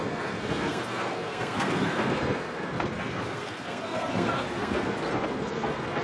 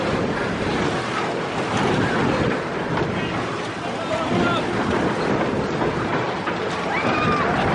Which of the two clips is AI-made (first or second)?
first